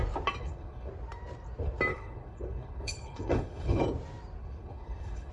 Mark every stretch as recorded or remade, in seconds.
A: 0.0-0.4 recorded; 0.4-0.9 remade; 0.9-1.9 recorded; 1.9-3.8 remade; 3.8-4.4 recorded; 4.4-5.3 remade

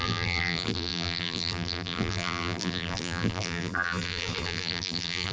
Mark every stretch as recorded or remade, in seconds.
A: 0.0-5.3 remade

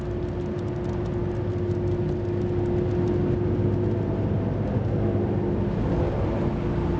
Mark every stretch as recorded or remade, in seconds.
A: 0.0-7.0 recorded